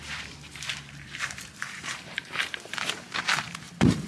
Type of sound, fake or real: fake